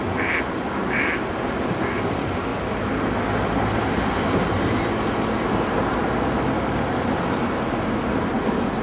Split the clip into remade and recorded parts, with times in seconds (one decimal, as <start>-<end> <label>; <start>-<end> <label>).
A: 0.0-8.8 recorded